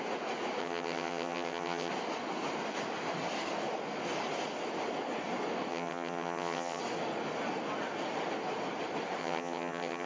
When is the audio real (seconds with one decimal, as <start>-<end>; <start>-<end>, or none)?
0.0-0.6; 1.9-5.7; 6.8-9.2